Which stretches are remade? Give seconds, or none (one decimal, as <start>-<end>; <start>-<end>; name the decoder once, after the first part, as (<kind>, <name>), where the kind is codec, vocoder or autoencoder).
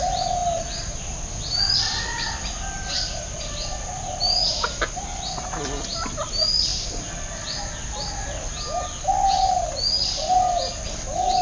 none